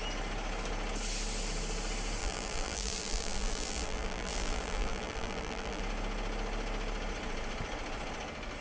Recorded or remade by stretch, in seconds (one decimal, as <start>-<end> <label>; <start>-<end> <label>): 0.0-2.2 recorded; 2.2-5.8 remade; 5.8-8.6 recorded